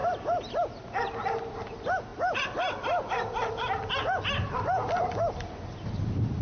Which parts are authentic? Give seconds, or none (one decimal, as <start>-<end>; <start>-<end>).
0.0-6.4

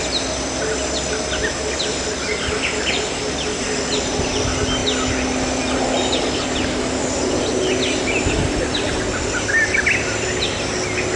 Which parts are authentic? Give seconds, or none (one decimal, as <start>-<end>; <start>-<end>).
0.0-11.2